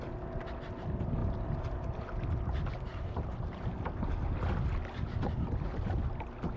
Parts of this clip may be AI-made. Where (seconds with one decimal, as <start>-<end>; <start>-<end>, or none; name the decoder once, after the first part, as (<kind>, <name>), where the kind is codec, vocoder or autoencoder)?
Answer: none